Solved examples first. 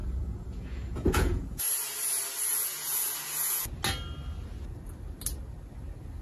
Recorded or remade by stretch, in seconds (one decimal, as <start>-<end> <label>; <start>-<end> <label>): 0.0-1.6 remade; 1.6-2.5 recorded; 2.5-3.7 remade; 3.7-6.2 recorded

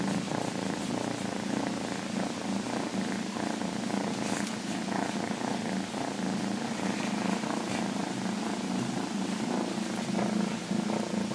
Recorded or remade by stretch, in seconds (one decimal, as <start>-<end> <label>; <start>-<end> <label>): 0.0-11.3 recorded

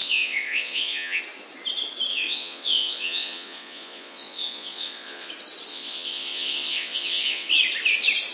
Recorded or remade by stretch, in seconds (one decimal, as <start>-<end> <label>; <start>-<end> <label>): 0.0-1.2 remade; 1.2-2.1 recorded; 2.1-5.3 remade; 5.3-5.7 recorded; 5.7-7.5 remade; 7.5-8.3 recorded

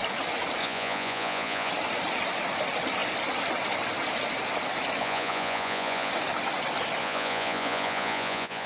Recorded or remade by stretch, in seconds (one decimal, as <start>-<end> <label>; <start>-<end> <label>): 0.0-0.6 recorded; 0.6-1.7 remade; 1.7-5.0 recorded; 5.0-6.1 remade; 6.1-7.0 recorded; 7.0-8.7 remade